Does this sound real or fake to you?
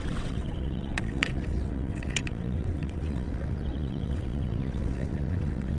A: fake